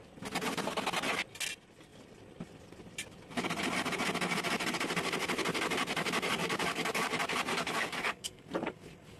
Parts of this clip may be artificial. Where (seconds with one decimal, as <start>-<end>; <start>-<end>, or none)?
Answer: 6.4-7.1; 7.5-8.4